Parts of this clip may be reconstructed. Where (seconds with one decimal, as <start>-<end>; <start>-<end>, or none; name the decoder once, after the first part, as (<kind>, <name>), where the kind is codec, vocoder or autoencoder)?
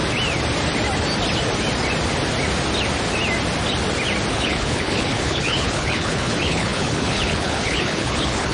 4.3-8.5 (codec, HILCodec)